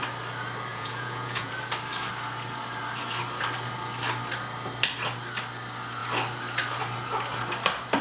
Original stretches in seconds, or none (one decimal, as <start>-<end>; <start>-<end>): 0.0-0.7; 1.5-8.0